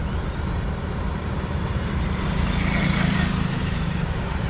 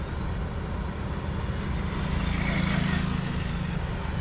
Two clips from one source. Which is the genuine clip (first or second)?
second